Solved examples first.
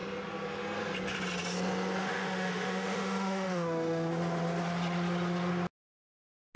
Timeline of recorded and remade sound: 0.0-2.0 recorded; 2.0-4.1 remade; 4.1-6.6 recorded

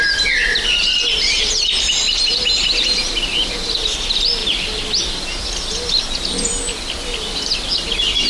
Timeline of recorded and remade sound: 0.0-8.3 recorded

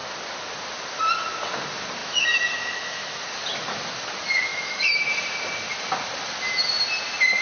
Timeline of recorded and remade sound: 0.0-2.0 recorded; 2.0-3.2 remade; 3.2-4.5 recorded; 4.5-5.1 remade; 5.1-7.4 recorded